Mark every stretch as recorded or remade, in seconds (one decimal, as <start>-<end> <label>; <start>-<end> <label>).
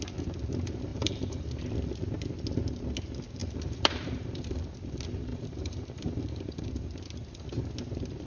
0.0-0.9 recorded; 0.9-1.6 remade; 1.6-3.4 recorded; 3.4-4.6 remade; 4.6-5.3 recorded; 5.3-6.7 remade; 6.7-8.3 recorded